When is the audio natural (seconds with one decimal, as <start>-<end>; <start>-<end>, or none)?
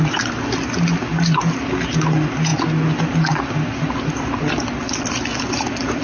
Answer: 0.0-6.0